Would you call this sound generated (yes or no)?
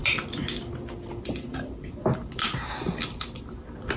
no